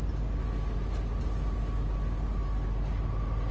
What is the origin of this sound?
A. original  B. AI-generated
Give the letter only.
A